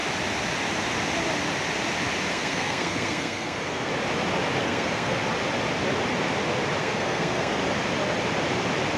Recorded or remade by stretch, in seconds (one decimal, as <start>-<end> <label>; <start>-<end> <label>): 0.0-2.3 recorded; 2.3-3.9 remade; 3.9-4.6 recorded; 4.6-5.2 remade; 5.2-6.8 recorded; 6.8-7.6 remade; 7.6-9.0 recorded